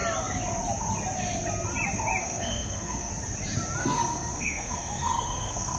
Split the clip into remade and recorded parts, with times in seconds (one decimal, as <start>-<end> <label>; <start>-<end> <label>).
0.0-2.2 recorded; 2.2-3.1 remade; 3.1-3.8 recorded; 3.8-5.8 remade